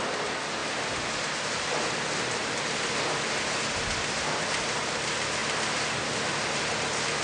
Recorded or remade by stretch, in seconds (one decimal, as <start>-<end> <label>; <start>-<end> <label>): 0.0-7.2 recorded